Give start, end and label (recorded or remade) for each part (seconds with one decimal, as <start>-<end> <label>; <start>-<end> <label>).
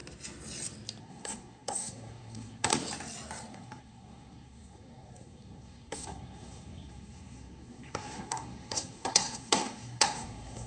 0.0-1.0 recorded; 1.0-2.8 remade; 2.8-3.5 recorded; 3.5-10.7 remade